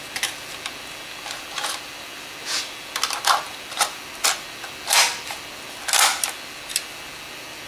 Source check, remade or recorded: recorded